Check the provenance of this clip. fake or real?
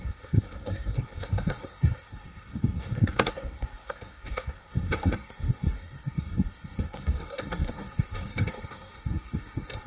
fake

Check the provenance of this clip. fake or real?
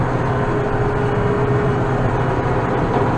real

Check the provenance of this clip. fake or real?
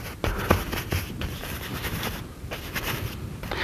real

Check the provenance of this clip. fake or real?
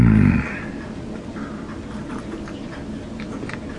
real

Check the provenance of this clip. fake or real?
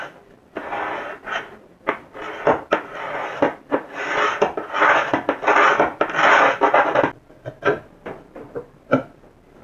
real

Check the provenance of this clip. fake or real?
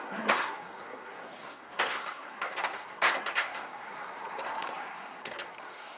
fake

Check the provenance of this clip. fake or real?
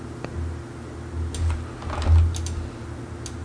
real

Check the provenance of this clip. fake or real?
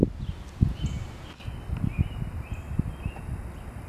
real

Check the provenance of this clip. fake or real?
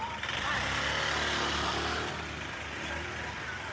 real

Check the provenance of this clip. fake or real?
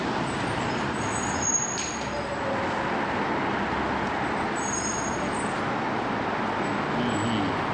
real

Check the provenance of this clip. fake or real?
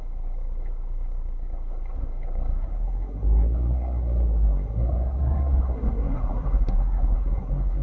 fake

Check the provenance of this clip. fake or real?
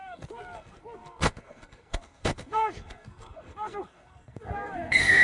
fake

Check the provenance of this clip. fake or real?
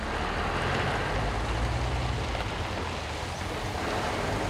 real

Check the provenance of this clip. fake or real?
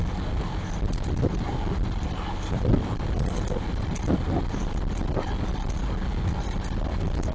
real